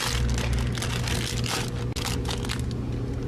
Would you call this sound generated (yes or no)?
no